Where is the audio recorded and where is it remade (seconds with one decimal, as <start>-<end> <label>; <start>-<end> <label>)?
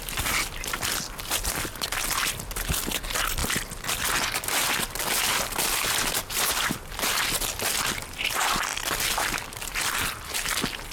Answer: 0.0-10.9 recorded